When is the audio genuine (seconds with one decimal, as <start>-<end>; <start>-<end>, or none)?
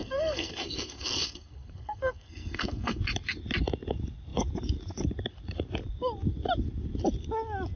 3.0-7.8